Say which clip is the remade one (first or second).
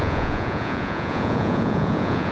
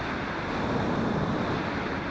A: first